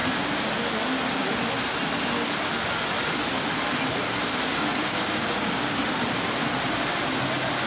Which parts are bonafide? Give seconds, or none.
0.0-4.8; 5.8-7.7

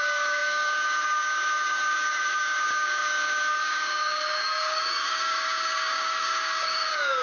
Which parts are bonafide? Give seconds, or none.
none

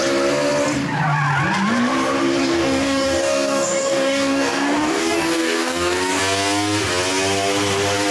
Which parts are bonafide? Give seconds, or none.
0.0-2.4; 6.2-8.1

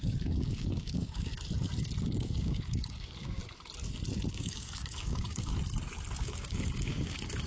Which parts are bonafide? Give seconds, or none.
1.3-2.0; 3.4-4.3; 5.5-6.2